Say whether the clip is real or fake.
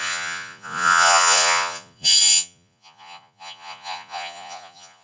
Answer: fake